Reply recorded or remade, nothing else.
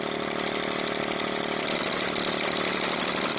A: recorded